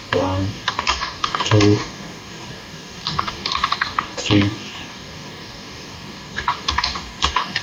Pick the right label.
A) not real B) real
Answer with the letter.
A